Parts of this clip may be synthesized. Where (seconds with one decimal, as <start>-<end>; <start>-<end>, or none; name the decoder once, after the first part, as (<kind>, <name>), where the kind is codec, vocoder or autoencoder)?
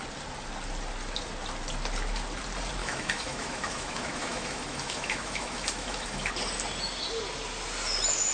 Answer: 2.8-6.3 (autoencoder, DAC-VAE)